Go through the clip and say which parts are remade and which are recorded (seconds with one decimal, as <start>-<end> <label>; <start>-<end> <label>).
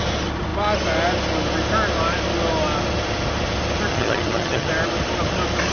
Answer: 0.0-3.9 recorded; 3.9-4.7 remade; 4.7-5.7 recorded